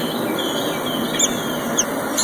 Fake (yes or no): no